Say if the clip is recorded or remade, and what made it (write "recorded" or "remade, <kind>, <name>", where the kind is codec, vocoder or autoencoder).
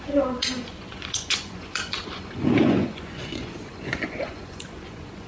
remade, vocoder, Vocos